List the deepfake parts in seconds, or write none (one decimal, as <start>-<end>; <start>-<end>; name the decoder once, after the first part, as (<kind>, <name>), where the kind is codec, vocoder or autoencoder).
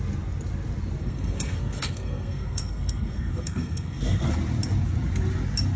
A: 1.0-4.3 (codec, SNAC)